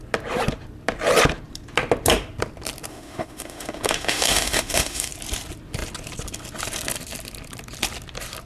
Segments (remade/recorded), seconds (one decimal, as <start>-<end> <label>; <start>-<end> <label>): 0.0-2.9 recorded; 2.9-5.1 remade; 5.1-8.5 recorded